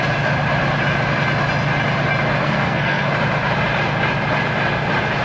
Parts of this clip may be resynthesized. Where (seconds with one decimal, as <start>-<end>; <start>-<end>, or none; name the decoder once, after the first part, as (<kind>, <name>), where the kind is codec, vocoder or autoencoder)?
2.4-3.1 (codec, SNAC)